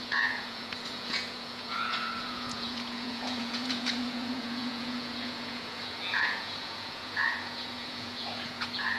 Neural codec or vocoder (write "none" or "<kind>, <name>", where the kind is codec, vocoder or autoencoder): vocoder, Vocos